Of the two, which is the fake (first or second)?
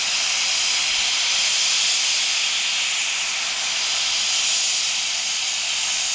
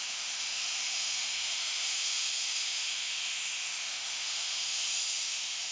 second